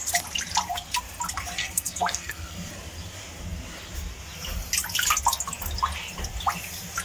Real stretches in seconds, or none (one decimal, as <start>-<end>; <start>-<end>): 0.0-1.6; 2.7-7.0